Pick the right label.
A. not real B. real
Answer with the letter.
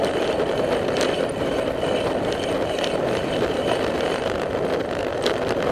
B